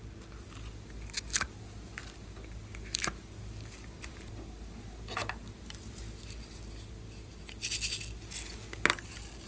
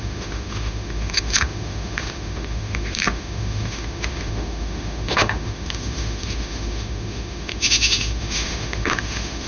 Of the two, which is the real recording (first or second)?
first